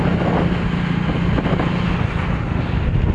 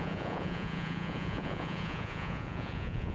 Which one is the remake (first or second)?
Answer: second